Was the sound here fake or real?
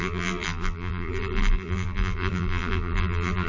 fake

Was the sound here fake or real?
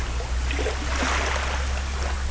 real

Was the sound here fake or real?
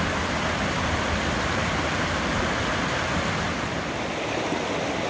real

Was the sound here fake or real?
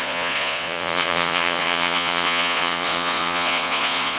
fake